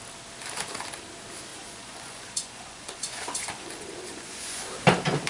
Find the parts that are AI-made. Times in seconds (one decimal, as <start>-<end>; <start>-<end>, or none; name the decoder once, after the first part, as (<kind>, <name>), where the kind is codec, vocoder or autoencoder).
1.5-4.7 (vocoder, Vocos)